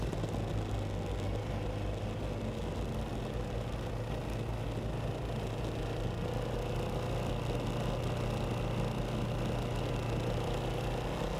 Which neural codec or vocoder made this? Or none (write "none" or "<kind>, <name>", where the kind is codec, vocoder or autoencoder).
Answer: none